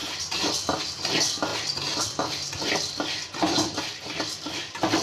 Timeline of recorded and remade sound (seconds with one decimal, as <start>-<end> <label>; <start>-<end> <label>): 0.0-5.0 recorded